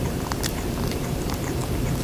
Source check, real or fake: fake